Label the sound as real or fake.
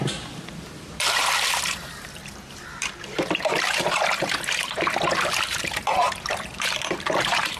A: fake